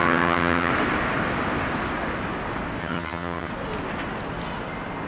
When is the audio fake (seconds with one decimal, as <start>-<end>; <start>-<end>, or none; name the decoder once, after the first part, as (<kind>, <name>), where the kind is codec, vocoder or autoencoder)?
0.0-0.7 (vocoder, HiFi-GAN); 2.8-3.5

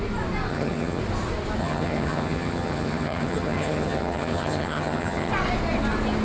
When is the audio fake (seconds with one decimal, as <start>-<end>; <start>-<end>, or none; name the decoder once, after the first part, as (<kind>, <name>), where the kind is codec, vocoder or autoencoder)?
0.5-1.0 (vocoder, HiFi-GAN); 1.6-5.3

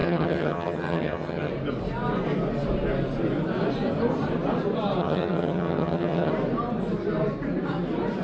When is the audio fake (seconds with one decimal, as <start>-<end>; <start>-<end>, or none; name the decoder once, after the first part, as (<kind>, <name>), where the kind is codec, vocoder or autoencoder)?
0.0-1.5 (vocoder, HiFi-GAN); 5.0-6.3

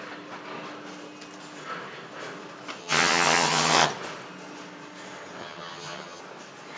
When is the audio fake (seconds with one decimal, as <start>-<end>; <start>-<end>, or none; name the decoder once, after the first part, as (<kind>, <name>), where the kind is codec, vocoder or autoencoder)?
2.8-3.9 (vocoder, HiFi-GAN); 5.4-6.2

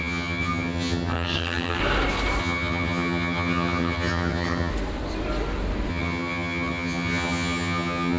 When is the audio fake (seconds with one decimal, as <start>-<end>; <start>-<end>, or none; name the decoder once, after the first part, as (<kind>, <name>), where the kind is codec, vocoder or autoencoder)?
0.0-1.8 (vocoder, HiFi-GAN); 2.4-4.7; 5.9-8.2

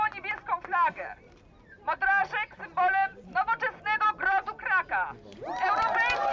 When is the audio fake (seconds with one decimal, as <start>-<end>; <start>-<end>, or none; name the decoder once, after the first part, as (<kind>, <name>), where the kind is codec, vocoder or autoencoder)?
none

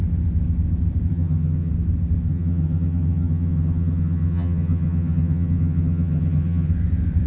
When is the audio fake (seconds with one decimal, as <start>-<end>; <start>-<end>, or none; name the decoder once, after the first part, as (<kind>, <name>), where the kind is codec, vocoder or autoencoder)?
1.1-1.7 (vocoder, HiFi-GAN); 2.3-6.7

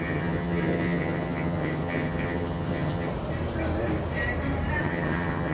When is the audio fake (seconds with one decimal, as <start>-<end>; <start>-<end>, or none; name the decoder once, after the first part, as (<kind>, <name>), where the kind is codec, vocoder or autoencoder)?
0.0-3.1 (vocoder, HiFi-GAN); 4.8-5.5